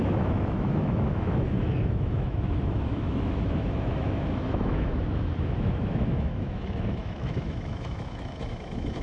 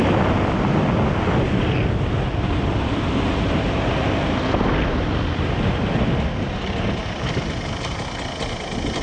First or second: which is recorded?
second